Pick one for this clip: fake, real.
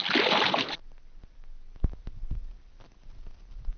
real